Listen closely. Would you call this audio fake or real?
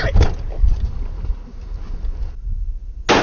real